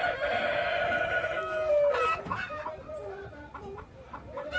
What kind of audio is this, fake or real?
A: real